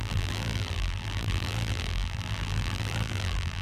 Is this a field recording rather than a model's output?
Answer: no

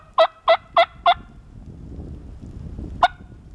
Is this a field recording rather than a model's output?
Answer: yes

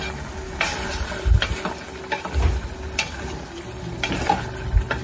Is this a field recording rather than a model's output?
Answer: yes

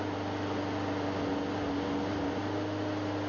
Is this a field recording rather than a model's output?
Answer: yes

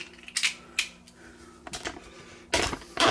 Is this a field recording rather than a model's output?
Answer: yes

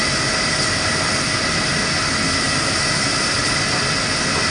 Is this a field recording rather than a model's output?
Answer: yes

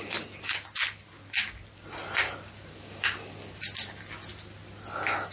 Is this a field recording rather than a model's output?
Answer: yes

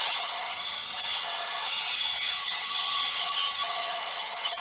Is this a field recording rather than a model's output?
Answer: no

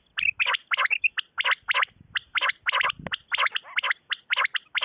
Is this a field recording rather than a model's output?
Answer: yes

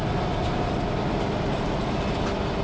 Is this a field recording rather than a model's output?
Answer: yes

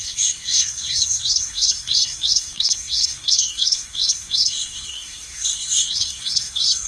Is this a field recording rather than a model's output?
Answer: no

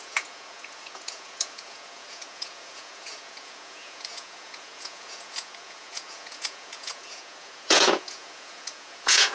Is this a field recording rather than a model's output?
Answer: no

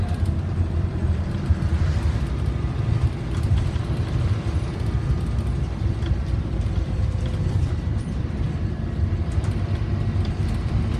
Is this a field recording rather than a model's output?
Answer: no